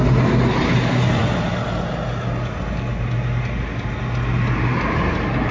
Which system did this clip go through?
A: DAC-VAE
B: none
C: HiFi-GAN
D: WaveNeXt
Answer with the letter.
B